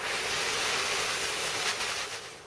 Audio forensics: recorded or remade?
recorded